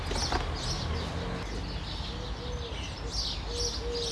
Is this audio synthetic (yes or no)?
no